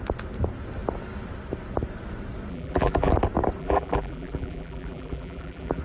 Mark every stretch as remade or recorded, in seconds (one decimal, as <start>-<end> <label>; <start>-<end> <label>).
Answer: 0.0-2.5 recorded; 2.5-3.1 remade; 3.1-3.6 recorded; 3.6-5.8 remade